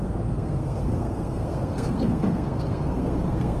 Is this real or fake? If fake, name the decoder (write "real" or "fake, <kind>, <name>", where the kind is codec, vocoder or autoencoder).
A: fake, codec, SNAC